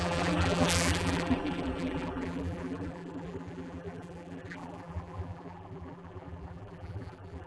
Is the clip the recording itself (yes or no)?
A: no